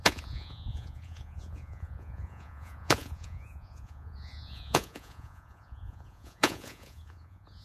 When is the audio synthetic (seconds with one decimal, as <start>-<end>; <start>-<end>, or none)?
0.0-7.6